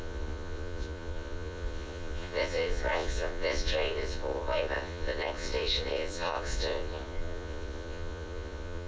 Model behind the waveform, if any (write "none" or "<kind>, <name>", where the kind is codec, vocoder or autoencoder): vocoder, Vocos